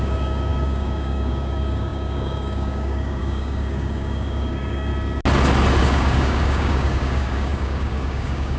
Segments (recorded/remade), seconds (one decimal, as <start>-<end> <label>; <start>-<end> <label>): 0.0-4.9 remade; 4.9-5.8 recorded; 5.8-8.6 remade